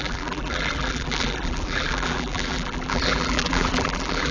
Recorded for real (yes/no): no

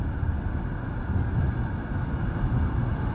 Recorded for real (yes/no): yes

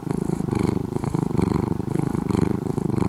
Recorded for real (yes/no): no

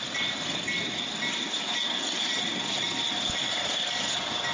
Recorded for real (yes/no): yes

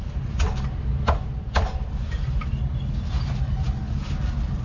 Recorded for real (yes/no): yes